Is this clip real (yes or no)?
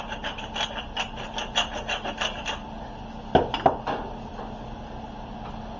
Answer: yes